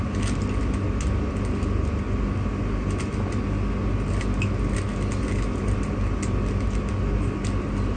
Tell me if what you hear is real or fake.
real